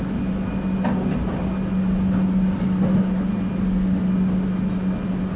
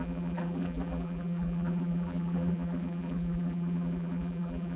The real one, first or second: first